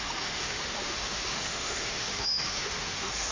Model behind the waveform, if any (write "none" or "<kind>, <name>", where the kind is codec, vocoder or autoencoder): autoencoder, DAC-VAE